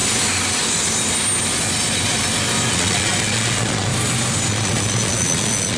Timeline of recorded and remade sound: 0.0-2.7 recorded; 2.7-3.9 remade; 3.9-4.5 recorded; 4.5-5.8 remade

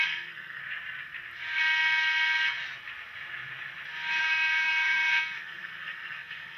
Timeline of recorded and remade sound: 0.0-0.6 remade; 0.6-4.2 recorded; 4.2-6.6 remade

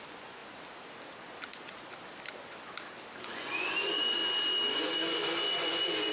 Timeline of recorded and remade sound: 0.0-0.4 remade; 0.4-3.2 recorded; 3.2-4.2 remade; 4.2-4.7 recorded; 4.7-6.1 remade

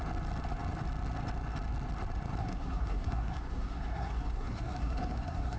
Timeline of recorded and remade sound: 0.0-2.4 recorded; 2.4-5.6 remade

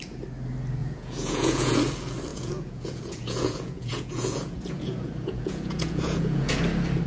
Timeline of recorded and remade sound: 0.0-0.8 recorded; 0.8-1.8 remade; 1.8-2.3 recorded; 2.3-6.6 remade; 6.6-7.1 recorded

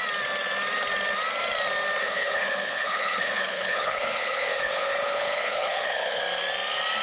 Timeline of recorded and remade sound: 0.0-2.0 recorded; 2.0-6.2 remade; 6.2-7.0 recorded